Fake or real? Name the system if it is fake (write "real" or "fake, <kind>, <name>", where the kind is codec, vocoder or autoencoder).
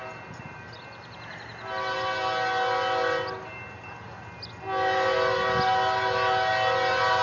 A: real